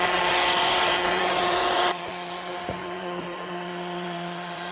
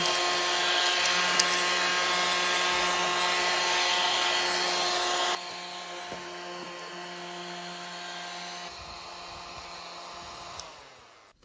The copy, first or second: first